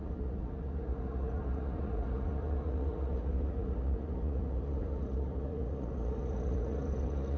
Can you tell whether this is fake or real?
fake